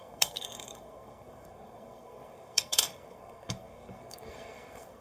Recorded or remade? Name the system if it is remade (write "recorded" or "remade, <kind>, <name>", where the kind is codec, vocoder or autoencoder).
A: remade, codec, SNAC